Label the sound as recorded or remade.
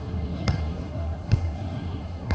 remade